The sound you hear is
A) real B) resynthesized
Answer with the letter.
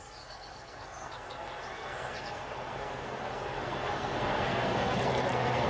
B